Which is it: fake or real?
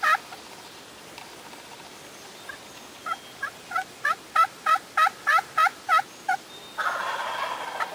real